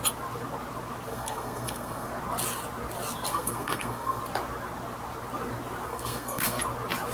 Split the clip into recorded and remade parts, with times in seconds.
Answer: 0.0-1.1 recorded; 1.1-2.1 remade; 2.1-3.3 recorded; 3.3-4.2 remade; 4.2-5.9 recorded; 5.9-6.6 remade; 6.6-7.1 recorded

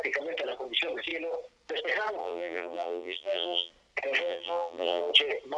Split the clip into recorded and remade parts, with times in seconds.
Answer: 0.0-2.2 recorded; 2.2-3.7 remade; 3.7-4.2 recorded; 4.2-5.1 remade; 5.1-5.6 recorded

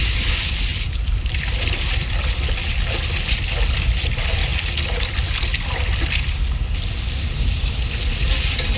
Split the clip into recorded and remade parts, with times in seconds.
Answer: 0.0-8.8 recorded